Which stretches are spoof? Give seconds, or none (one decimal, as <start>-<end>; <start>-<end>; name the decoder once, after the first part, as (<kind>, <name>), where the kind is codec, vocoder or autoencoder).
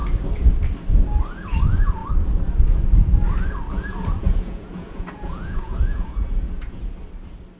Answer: 1.2-2.0 (vocoder, Vocos); 3.7-6.8